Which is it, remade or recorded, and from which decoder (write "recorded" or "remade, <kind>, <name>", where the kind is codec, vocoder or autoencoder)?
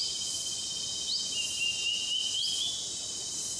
recorded